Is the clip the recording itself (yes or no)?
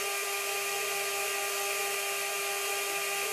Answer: yes